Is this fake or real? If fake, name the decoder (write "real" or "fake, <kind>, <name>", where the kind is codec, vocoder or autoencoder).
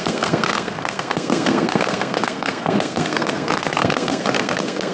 fake, codec, SNAC